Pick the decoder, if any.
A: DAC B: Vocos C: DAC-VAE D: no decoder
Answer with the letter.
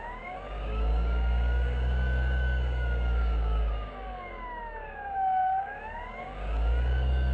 A